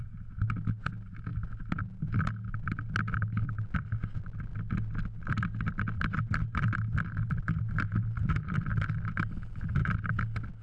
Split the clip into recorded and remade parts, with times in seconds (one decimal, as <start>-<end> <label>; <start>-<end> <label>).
0.0-10.6 recorded